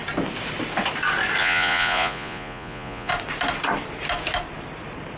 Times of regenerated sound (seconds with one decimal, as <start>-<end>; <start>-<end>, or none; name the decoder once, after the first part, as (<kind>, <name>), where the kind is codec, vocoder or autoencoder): 1.4-3.1 (vocoder, Vocos)